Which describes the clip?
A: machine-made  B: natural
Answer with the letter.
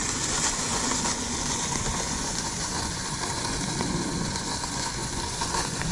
A